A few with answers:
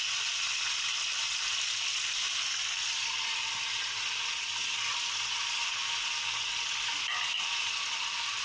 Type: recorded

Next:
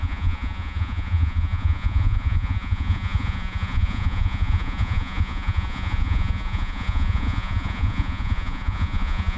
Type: remade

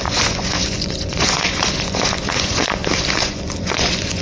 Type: remade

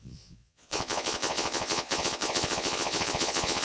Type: remade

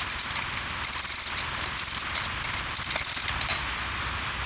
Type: recorded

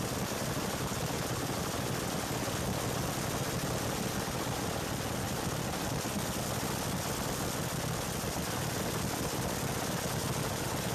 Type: recorded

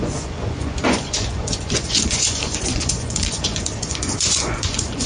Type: remade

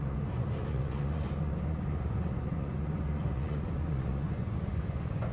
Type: remade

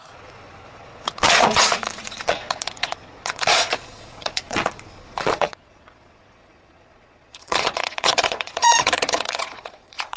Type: remade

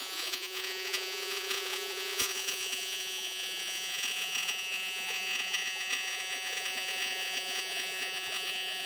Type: remade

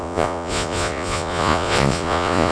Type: remade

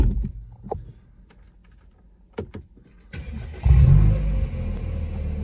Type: recorded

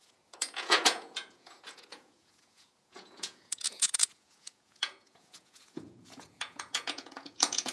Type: remade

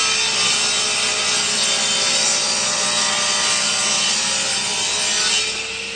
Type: recorded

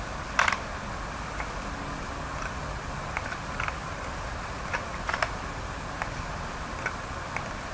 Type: recorded